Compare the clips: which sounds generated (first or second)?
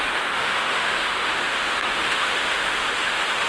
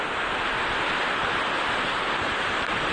first